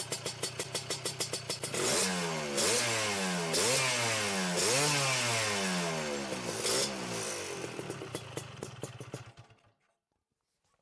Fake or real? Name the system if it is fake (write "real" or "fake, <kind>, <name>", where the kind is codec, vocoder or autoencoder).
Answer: real